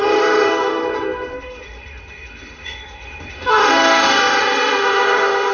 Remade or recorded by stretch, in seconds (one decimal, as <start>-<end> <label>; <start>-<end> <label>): 0.0-5.5 remade

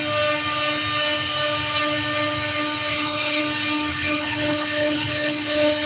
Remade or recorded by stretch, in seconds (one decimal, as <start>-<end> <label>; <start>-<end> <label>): 0.0-2.9 recorded; 2.9-3.4 remade; 3.4-3.9 recorded; 3.9-5.9 remade

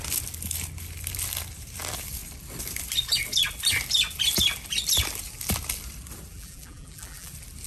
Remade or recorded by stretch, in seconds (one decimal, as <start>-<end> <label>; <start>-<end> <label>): 0.0-6.3 recorded; 6.3-7.3 remade; 7.3-7.7 recorded